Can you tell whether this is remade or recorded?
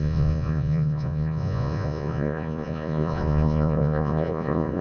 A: remade